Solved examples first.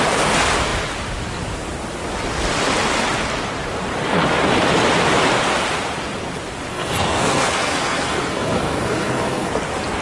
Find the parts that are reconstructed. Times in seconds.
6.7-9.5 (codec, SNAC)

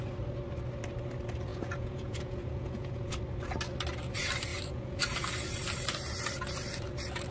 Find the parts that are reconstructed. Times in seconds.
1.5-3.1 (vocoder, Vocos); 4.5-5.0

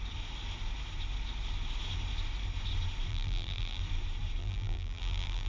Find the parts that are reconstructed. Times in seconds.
3.1-3.8 (vocoder, BigVGAN v2); 4.4-5.5

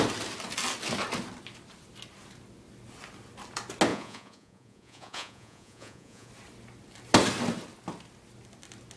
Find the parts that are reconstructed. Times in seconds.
3.9-6.3 (vocoder, Vocos)

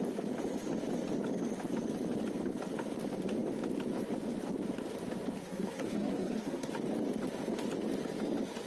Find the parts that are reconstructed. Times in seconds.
5.4-6.7 (codec, SNAC)

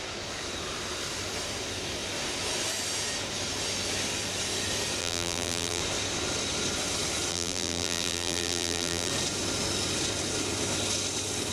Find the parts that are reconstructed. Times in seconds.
5.0-5.8 (vocoder, BigVGAN v2); 7.3-9.1

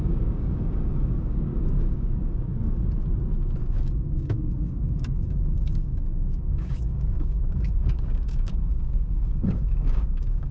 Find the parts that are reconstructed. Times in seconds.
0.0-2.5 (codec, DAC); 3.6-10.5